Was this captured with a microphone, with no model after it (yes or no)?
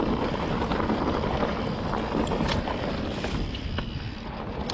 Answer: yes